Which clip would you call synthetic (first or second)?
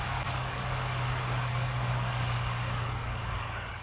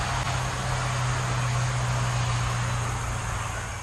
first